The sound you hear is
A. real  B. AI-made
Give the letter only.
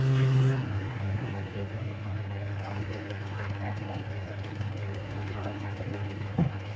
B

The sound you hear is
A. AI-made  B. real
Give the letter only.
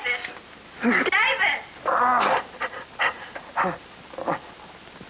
B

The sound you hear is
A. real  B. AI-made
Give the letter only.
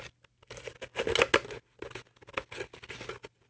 A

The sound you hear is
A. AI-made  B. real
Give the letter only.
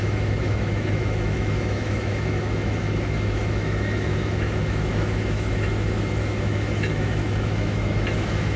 A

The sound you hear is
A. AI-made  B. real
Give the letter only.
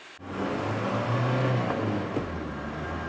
B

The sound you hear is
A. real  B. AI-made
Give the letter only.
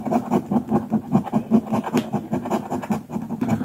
A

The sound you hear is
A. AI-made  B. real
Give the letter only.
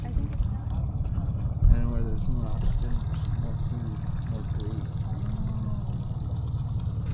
B